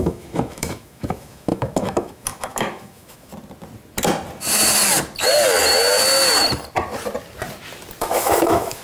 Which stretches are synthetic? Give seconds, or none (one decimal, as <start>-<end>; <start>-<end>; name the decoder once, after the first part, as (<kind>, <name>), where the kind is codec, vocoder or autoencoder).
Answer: 0.0-3.3 (autoencoder, DAC-VAE); 8.0-8.8